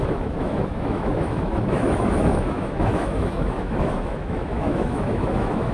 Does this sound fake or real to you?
fake